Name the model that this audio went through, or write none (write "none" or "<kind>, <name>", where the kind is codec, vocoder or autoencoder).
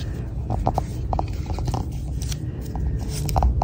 none